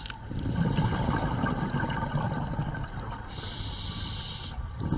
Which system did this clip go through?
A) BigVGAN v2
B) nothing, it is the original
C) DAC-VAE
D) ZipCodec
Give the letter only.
B